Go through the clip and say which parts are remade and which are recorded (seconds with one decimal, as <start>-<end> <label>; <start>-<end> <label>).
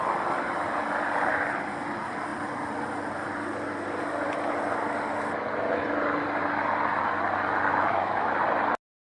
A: 0.0-7.7 recorded; 7.7-8.3 remade; 8.3-9.2 recorded